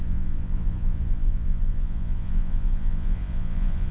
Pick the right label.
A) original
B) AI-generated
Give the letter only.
B